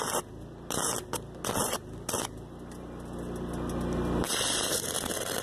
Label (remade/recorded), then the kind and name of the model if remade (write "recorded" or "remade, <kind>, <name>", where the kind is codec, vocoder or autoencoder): recorded